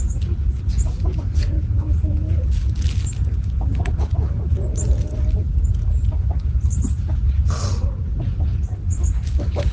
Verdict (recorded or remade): recorded